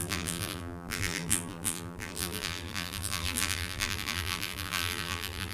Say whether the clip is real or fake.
fake